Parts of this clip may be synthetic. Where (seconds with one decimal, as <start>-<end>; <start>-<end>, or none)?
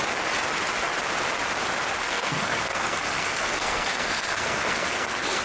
2.0-5.4